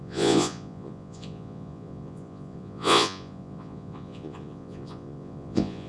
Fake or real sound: fake